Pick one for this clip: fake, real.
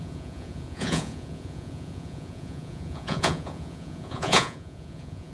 fake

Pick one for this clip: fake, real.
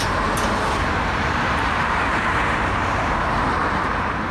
fake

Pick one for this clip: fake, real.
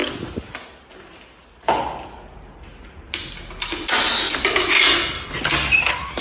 real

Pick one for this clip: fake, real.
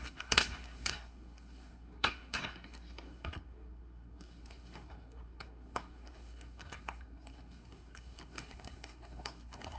fake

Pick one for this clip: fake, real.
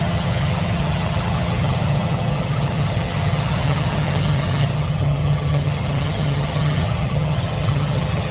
fake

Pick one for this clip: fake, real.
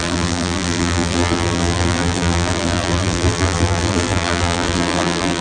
fake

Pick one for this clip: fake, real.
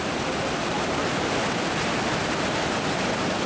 real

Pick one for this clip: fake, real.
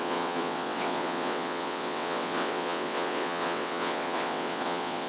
fake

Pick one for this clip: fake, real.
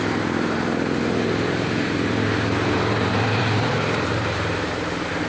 fake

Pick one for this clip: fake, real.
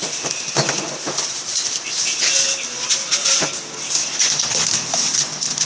real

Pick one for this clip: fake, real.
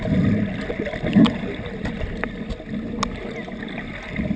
real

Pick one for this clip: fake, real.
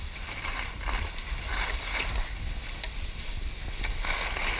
real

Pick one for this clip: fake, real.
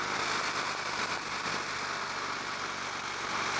real